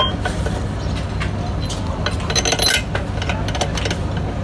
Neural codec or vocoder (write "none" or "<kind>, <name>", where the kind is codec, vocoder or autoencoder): none